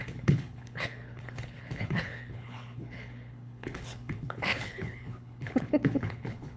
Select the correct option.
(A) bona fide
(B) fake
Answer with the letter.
B